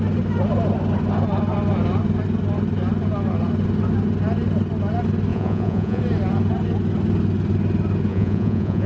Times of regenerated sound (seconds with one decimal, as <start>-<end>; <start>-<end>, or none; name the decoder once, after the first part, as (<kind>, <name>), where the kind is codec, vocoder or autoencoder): 5.3-6.0 (vocoder, Vocos); 8.1-8.9